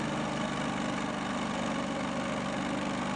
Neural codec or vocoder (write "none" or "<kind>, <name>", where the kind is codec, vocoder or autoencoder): none